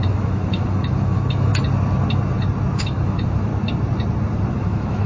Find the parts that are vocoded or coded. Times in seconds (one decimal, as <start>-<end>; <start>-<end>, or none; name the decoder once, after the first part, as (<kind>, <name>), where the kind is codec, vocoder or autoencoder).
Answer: 0.0-1.5 (autoencoder, DAC-VAE); 2.8-3.5; 4.5-5.1